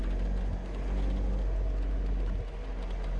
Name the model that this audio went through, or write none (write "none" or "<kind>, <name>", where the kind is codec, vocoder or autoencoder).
none